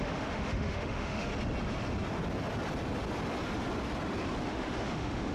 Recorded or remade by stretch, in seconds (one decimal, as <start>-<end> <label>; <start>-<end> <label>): 0.0-1.3 remade; 1.3-4.5 recorded; 4.5-5.3 remade